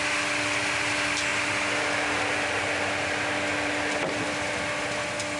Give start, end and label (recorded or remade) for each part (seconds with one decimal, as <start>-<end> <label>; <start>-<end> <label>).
0.0-1.3 recorded; 1.3-4.5 remade; 4.5-5.4 recorded

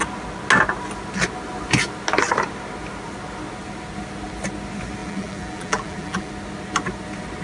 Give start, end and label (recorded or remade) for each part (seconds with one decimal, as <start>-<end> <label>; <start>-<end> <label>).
0.0-5.0 recorded; 5.0-6.3 remade; 6.3-7.4 recorded

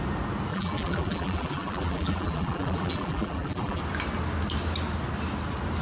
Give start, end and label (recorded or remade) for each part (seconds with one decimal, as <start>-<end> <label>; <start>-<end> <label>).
0.0-0.5 recorded; 0.5-3.8 remade; 3.8-5.8 recorded